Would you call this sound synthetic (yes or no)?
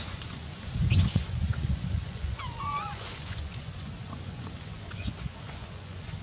yes